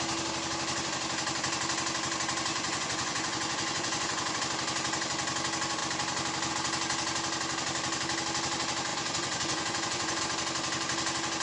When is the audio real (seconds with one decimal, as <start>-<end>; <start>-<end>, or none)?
0.0-2.5; 4.4-8.9; 10.2-11.4